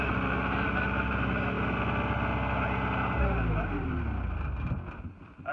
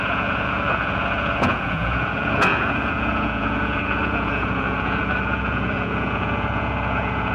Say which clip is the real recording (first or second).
first